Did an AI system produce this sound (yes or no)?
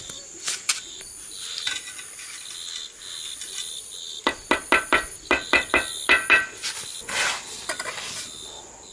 no